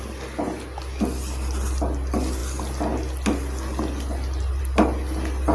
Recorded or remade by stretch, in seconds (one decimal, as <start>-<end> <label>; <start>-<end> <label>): 0.0-5.5 recorded

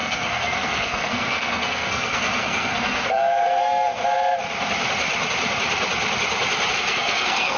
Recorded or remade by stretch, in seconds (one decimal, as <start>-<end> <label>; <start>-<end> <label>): 0.0-4.0 remade; 4.0-6.7 recorded; 6.7-7.6 remade